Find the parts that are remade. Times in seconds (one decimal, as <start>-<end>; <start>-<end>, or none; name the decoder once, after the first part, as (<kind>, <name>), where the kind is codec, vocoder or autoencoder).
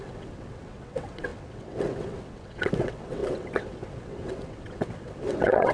0.0-5.7 (vocoder, WaveNeXt)